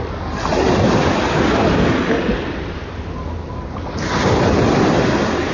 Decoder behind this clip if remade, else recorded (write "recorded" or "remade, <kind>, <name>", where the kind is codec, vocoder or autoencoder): recorded